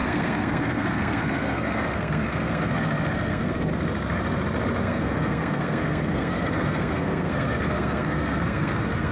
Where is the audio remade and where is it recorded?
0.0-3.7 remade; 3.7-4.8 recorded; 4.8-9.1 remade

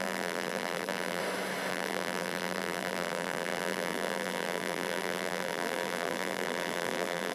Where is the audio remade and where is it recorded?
0.0-1.2 remade; 1.2-1.7 recorded; 1.7-7.3 remade

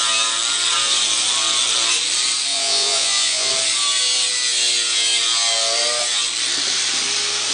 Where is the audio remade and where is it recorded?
0.0-2.5 recorded; 2.5-3.5 remade; 3.5-7.5 recorded

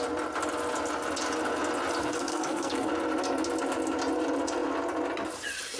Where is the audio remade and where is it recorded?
0.0-2.0 recorded; 2.0-2.9 remade; 2.9-5.8 recorded